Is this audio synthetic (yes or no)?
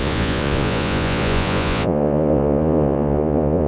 yes